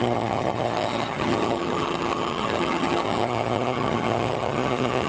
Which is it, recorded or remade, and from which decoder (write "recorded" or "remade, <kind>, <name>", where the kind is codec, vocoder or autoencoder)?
remade, vocoder, HiFi-GAN